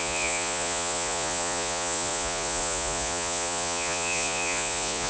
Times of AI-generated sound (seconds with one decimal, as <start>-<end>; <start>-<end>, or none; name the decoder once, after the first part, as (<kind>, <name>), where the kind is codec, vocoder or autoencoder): 0.0-5.1 (vocoder, Vocos)